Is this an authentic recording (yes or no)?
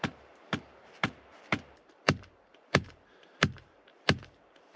no